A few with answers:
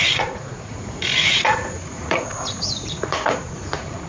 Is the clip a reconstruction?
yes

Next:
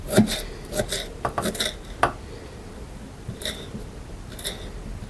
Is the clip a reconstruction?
no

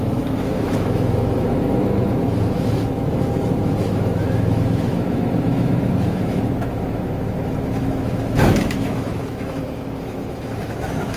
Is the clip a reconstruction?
yes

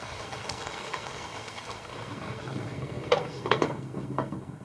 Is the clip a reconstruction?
yes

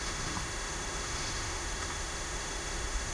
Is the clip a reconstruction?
yes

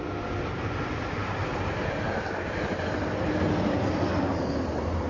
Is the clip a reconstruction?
no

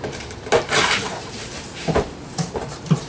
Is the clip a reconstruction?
yes